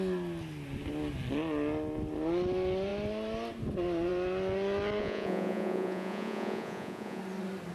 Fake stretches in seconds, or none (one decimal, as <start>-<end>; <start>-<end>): 5.0-7.2